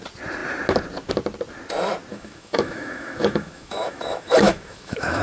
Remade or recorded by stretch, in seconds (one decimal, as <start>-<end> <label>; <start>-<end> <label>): 0.0-2.1 recorded; 2.1-5.2 remade